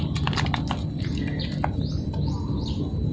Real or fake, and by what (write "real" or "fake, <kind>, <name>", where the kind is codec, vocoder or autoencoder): real